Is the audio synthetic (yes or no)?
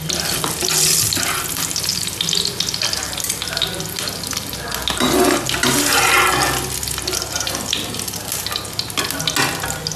no